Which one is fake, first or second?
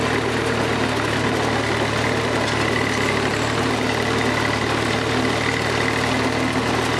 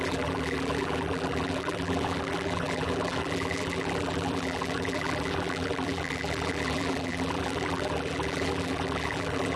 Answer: second